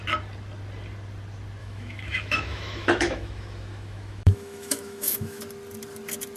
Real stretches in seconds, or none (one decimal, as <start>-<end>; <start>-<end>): 0.0-1.6; 5.4-6.4